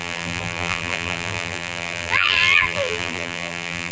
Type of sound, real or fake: fake